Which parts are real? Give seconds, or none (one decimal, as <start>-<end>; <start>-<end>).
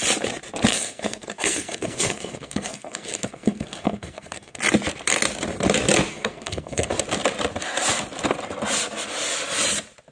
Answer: 0.0-0.7; 4.6-6.1; 6.9-10.1